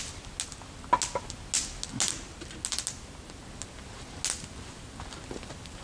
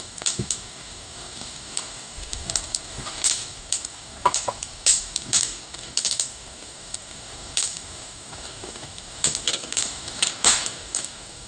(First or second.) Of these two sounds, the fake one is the second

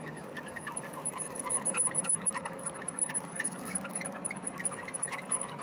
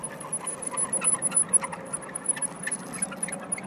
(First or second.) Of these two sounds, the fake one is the first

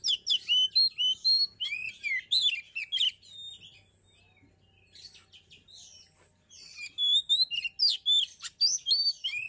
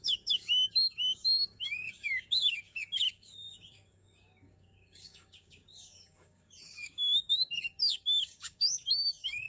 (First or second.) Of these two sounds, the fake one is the second